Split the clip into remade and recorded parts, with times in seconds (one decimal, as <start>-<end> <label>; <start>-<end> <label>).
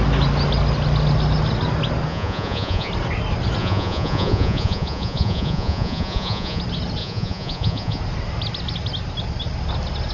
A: 0.0-2.1 recorded; 2.1-2.9 remade; 2.9-3.6 recorded; 3.6-6.6 remade; 6.6-7.0 recorded; 7.0-8.0 remade; 8.0-10.1 recorded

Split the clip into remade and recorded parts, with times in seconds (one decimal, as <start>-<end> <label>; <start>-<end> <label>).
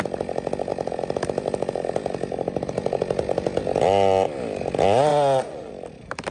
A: 0.0-5.1 recorded; 5.1-5.7 remade; 5.7-6.3 recorded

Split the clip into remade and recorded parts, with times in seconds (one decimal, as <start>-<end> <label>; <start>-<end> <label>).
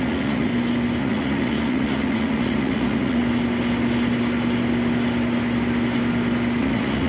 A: 0.0-0.5 remade; 0.5-1.0 recorded; 1.0-3.2 remade; 3.2-6.6 recorded; 6.6-7.1 remade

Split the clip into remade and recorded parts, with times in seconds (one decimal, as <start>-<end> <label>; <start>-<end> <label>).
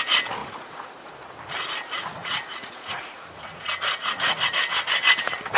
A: 0.0-0.4 recorded; 0.4-1.3 remade; 1.3-2.2 recorded; 2.2-4.5 remade; 4.5-5.6 recorded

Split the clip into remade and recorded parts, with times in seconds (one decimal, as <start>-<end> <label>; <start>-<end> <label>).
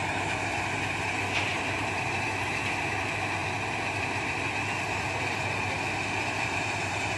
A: 0.0-7.2 recorded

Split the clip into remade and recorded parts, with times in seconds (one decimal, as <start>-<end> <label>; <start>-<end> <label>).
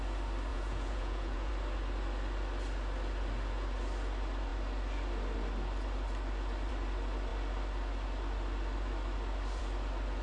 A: 0.0-0.5 recorded; 0.5-1.5 remade; 1.5-10.2 recorded